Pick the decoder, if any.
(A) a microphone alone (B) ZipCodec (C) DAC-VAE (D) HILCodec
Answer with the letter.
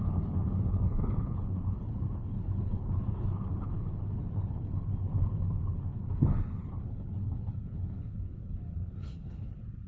D